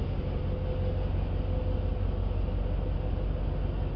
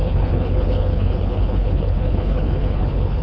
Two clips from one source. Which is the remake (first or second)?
second